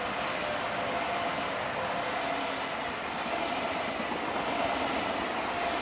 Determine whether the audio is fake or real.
real